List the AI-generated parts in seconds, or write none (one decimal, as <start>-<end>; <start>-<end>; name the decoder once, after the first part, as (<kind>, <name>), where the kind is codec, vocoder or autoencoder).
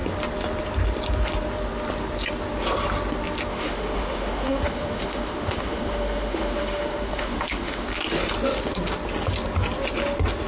3.5-7.9 (autoencoder, DAC-VAE)